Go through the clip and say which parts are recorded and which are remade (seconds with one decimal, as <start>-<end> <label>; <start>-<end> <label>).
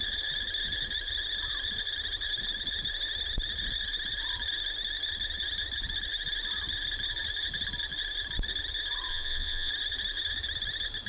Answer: 0.0-9.1 recorded; 9.1-9.7 remade; 9.7-11.1 recorded